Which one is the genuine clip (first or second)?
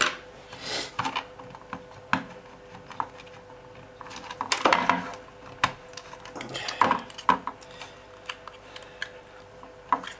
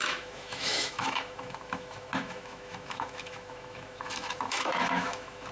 first